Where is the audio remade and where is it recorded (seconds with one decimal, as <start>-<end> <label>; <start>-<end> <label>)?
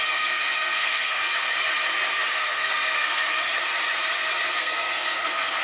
0.0-1.2 remade; 1.2-2.3 recorded; 2.3-3.5 remade; 3.5-4.6 recorded; 4.6-5.6 remade